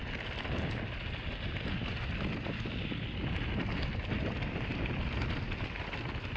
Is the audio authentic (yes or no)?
yes